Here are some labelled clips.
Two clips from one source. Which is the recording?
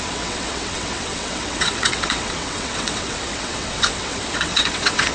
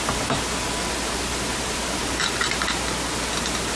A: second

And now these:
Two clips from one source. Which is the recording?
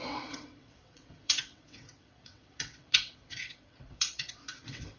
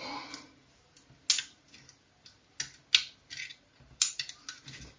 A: second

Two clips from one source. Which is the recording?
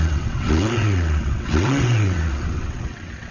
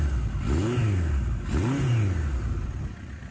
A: second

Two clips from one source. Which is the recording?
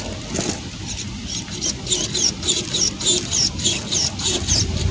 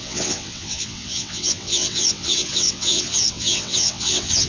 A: first